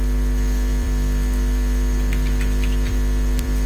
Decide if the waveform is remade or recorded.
remade